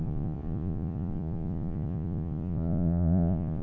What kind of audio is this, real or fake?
fake